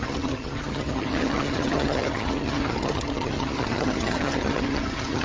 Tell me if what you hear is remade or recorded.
remade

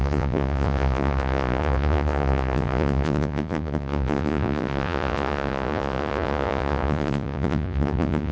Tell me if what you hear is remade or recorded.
remade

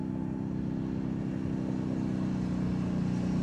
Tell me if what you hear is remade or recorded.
recorded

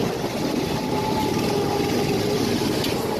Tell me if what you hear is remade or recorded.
recorded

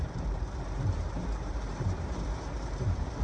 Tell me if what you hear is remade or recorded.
remade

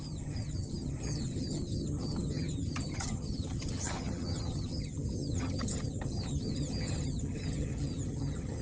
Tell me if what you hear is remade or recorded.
remade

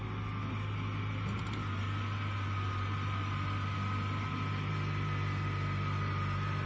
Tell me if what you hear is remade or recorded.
recorded